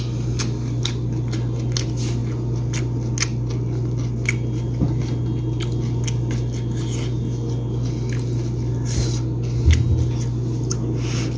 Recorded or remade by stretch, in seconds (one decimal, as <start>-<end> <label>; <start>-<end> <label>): 0.0-11.4 recorded